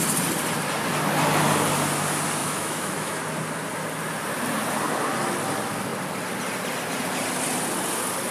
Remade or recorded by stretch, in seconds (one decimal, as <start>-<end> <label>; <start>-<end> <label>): 0.0-2.4 recorded; 2.4-3.2 remade; 3.2-8.3 recorded